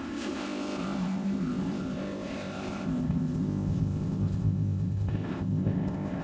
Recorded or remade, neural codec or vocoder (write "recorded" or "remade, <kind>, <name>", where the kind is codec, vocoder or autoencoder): remade, codec, ZipCodec